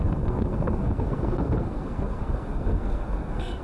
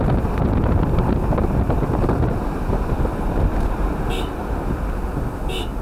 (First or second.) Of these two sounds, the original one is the second